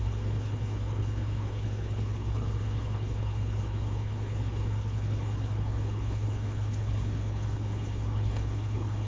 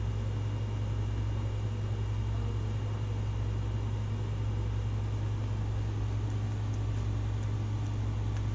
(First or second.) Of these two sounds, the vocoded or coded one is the first